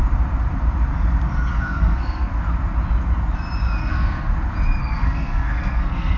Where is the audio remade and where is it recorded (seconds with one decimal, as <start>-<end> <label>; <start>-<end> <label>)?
0.0-1.5 recorded; 1.5-2.3 remade; 2.3-3.8 recorded; 3.8-4.3 remade; 4.3-4.8 recorded; 4.8-6.2 remade